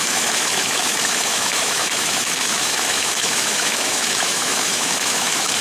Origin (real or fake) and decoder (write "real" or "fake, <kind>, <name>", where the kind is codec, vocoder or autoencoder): fake, autoencoder, DAC-VAE